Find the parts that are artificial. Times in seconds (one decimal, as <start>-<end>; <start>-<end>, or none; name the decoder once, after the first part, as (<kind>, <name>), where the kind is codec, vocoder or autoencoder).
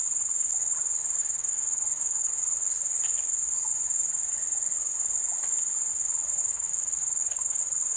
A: 1.2-2.3 (codec, DAC); 6.4-7.6